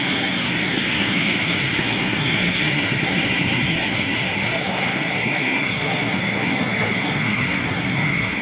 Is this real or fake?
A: fake